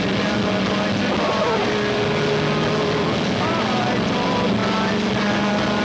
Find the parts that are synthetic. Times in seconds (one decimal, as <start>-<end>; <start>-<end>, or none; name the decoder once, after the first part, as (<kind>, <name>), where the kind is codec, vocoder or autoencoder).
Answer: none